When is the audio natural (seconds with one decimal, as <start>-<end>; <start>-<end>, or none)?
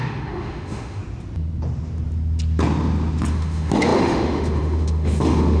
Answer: 1.0-3.3